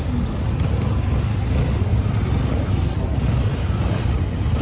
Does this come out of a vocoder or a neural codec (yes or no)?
no